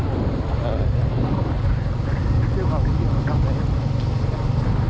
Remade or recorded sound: recorded